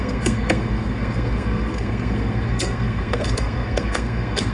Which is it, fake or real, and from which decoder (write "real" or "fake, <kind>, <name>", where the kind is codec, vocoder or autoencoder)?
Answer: fake, codec, SNAC